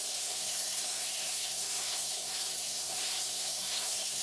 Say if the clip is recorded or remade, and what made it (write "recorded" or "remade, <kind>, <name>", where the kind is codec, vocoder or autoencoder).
remade, codec, SNAC